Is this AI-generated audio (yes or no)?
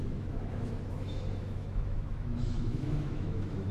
yes